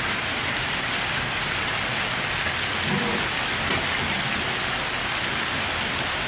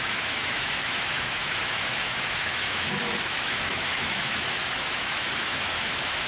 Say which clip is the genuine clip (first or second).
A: first